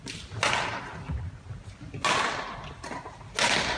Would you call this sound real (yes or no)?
yes